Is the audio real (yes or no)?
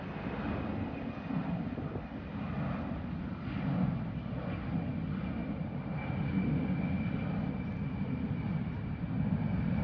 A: yes